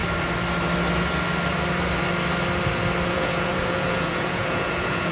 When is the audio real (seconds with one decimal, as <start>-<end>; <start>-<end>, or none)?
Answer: 0.0-3.1